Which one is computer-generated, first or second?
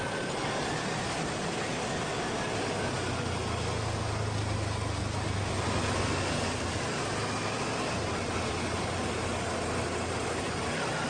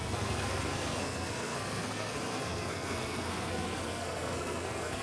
second